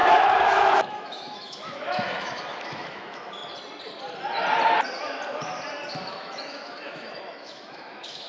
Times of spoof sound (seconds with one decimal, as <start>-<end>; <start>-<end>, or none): 0.0-3.4; 6.1-8.3